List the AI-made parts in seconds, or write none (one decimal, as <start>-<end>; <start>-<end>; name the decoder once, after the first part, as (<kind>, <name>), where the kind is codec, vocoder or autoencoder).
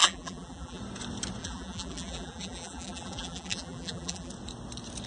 0.0-0.8 (vocoder, BigVGAN v2); 1.4-4.3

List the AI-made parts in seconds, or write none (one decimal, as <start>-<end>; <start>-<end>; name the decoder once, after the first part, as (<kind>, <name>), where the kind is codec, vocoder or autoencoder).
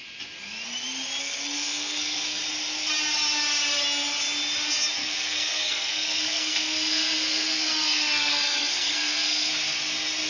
1.2-2.4 (codec, SNAC); 5.0-9.5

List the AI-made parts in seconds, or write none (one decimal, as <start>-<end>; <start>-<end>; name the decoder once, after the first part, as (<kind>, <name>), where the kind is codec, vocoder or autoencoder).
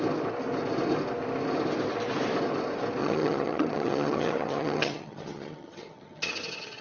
3.0-6.8 (vocoder, HiFi-GAN)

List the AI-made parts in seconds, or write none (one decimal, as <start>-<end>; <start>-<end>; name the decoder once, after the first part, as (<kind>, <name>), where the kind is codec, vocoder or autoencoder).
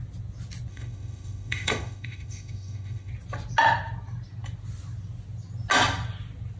0.7-3.1 (autoencoder, DAC-VAE)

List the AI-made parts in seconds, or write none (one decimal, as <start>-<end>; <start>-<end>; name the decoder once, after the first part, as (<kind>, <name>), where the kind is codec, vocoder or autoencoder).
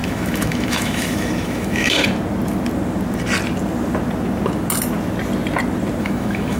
0.0-2.0 (autoencoder, DAC-VAE); 6.0-6.6